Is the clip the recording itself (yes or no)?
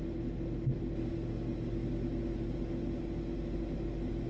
yes